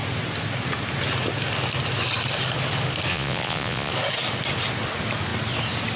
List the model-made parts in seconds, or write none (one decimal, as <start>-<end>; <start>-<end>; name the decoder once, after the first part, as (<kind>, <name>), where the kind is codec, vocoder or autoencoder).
3.1-3.9 (vocoder, Vocos)